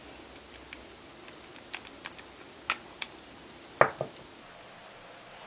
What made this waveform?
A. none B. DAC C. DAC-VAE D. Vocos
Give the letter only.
A